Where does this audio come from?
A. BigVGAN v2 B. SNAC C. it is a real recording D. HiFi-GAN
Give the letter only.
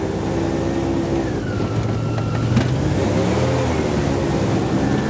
C